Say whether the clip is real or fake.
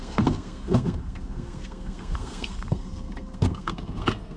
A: fake